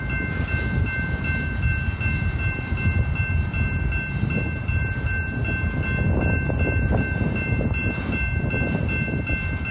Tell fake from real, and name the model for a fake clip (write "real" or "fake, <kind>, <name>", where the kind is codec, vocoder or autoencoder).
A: real